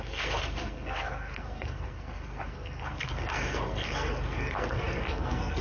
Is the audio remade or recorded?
remade